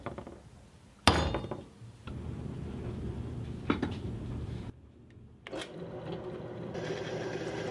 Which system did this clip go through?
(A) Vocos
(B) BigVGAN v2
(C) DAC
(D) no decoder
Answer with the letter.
D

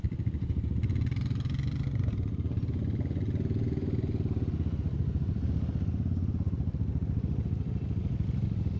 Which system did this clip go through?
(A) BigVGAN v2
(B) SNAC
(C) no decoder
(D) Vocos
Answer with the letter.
C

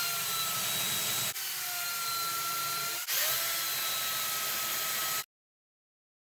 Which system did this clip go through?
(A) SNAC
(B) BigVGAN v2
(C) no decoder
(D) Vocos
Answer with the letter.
C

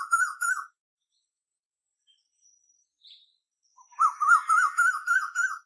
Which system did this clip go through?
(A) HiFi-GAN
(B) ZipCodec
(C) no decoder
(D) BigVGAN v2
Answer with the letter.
D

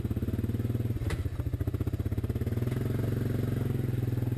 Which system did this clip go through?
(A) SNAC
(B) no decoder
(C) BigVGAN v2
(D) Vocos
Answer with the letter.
B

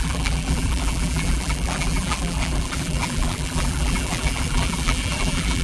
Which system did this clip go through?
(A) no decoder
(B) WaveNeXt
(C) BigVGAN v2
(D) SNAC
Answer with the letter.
C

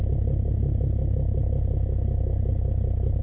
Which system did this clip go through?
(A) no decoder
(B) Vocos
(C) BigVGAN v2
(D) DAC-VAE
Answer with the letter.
A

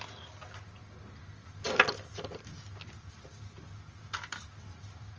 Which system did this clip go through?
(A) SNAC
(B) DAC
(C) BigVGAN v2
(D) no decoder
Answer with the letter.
D